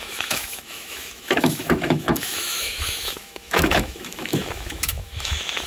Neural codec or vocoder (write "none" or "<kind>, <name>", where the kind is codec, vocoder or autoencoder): autoencoder, DAC-VAE